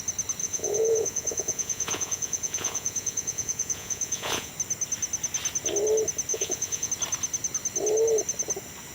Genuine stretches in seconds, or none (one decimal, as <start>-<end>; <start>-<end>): 0.0-0.4; 4.5-6.3; 6.9-8.9